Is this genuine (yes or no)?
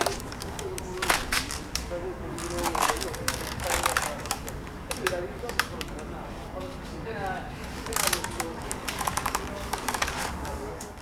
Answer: no